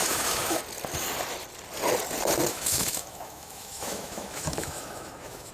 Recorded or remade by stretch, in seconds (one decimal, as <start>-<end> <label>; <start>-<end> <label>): 0.0-0.6 remade; 0.6-2.5 recorded; 2.5-5.5 remade